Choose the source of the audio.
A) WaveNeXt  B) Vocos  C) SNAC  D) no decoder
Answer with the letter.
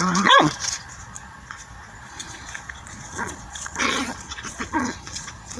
B